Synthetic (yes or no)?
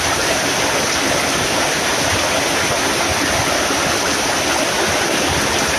no